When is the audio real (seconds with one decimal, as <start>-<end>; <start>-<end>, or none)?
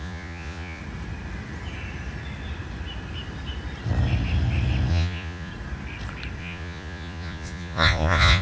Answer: 0.8-4.9; 5.5-6.4